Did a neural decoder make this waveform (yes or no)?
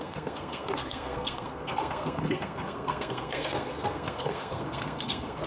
yes